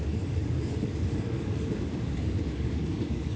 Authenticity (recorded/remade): remade